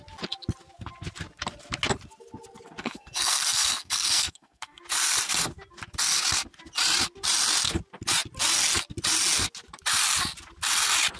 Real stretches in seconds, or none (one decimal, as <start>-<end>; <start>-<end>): 0.0-2.8; 4.8-11.2